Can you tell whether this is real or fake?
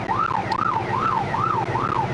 real